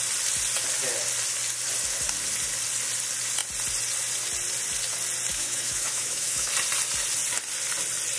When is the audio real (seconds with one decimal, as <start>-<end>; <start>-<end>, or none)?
0.0-5.3; 6.5-8.2